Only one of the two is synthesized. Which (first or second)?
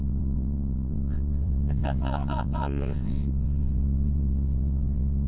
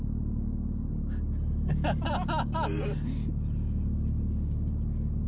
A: first